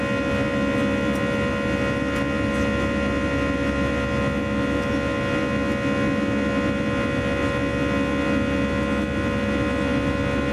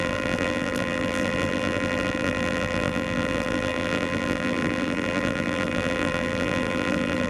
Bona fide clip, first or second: first